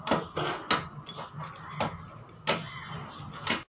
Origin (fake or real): real